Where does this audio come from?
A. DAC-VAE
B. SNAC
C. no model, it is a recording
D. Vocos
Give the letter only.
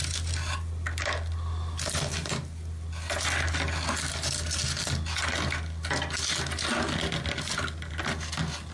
C